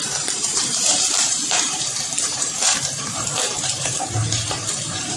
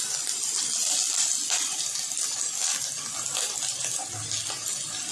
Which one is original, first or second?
second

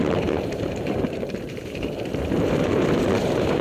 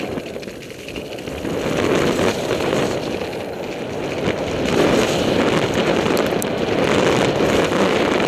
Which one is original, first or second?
second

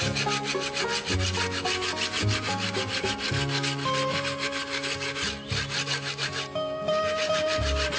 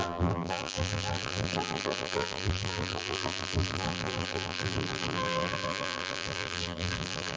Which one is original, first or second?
first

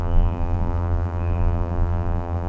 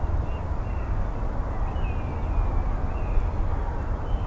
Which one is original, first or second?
second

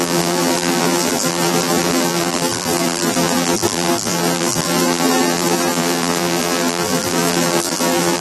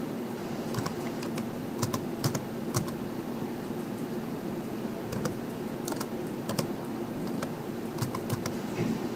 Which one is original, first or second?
second